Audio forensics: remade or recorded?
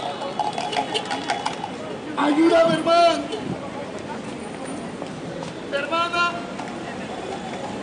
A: recorded